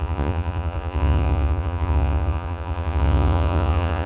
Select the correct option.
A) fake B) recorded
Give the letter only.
A